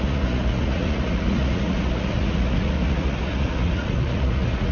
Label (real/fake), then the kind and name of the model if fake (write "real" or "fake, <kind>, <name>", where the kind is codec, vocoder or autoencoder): fake, vocoder, Vocos